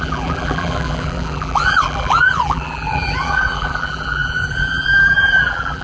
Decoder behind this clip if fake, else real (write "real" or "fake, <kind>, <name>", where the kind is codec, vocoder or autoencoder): fake, vocoder, BigVGAN v2